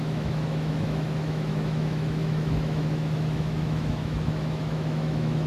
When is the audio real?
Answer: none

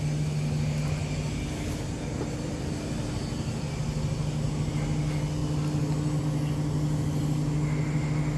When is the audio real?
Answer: 0.0-8.4

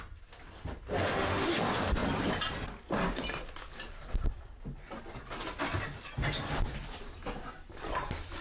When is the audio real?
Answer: 0.0-1.0; 1.5-8.4

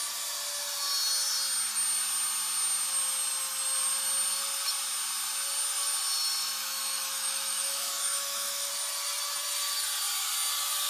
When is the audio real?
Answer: 0.0-6.6; 8.7-10.9

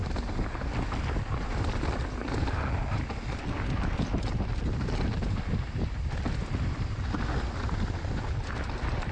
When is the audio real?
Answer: 0.0-9.1